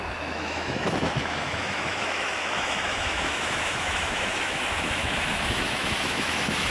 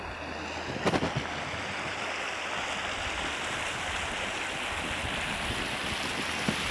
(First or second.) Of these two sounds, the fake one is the first